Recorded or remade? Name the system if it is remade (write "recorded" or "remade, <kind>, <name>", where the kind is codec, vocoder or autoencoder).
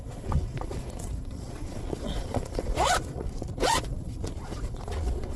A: remade, vocoder, Vocos